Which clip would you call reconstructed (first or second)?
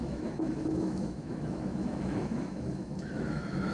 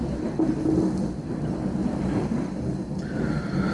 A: first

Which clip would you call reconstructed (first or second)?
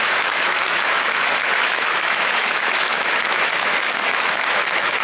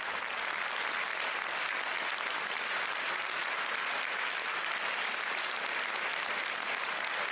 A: first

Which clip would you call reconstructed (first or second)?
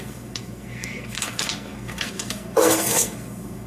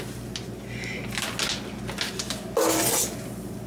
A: first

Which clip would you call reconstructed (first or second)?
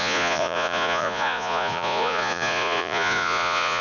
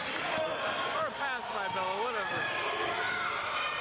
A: first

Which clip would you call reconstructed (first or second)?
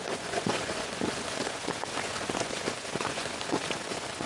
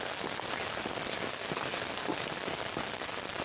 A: first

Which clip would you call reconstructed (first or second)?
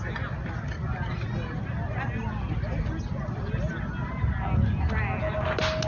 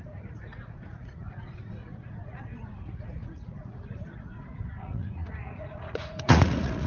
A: second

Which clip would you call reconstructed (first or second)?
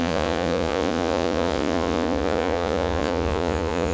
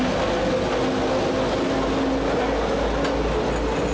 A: first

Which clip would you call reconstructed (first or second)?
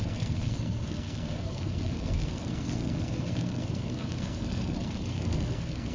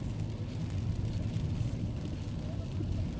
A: first